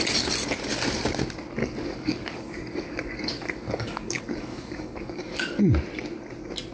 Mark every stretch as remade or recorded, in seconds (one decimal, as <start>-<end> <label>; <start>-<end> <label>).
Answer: 0.0-1.6 recorded; 1.6-5.6 remade; 5.6-6.7 recorded